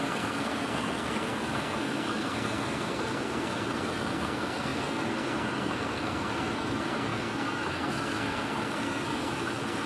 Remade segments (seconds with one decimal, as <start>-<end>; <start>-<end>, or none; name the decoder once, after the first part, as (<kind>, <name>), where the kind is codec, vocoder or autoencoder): 0.0-9.9 (codec, SNAC)

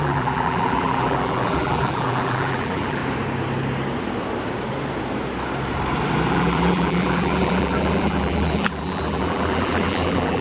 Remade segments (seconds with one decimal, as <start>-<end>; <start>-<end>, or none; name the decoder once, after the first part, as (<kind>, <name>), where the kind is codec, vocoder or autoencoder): 0.0-3.0 (vocoder, BigVGAN v2); 6.3-10.4

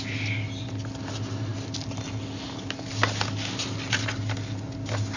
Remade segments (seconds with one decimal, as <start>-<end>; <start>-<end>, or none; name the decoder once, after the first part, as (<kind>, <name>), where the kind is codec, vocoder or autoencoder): none

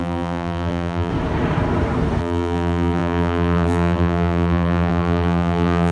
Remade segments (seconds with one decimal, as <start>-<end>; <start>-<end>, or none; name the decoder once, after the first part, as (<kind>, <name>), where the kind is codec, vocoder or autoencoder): 0.0-1.1 (vocoder, BigVGAN v2); 2.2-5.9